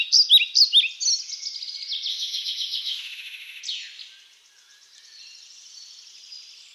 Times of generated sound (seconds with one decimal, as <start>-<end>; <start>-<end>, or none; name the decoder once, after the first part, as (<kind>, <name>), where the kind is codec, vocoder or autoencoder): 2.1-3.6 (autoencoder, DAC-VAE)